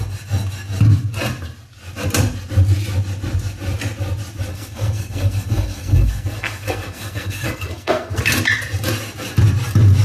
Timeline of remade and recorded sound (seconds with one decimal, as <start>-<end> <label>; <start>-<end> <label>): 0.0-4.5 recorded; 4.5-8.2 remade; 8.2-10.0 recorded